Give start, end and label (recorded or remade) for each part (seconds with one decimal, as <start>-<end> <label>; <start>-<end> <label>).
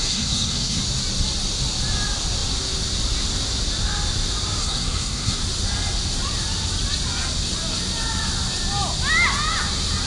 0.0-0.8 remade; 0.8-4.6 recorded; 4.6-5.4 remade; 5.4-10.1 recorded